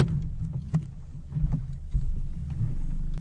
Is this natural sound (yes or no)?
yes